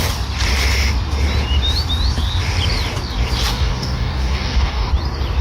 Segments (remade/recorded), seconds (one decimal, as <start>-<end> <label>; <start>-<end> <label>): 0.0-3.5 recorded; 3.5-4.9 remade; 4.9-5.4 recorded